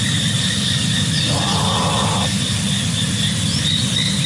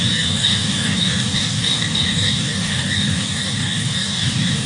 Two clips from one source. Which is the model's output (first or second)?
second